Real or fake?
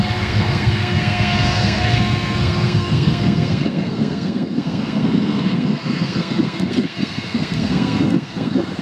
fake